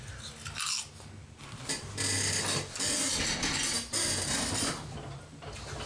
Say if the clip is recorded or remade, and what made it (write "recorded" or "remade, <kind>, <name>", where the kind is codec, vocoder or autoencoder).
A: recorded